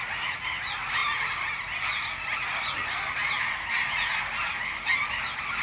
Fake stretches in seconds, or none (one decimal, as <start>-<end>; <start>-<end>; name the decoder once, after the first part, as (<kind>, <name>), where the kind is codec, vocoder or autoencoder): none